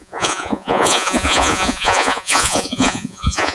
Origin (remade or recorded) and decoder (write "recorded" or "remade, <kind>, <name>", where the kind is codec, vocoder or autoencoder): remade, vocoder, Vocos